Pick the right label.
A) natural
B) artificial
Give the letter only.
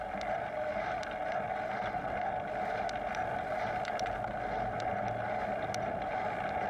A